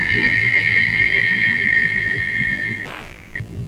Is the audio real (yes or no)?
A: no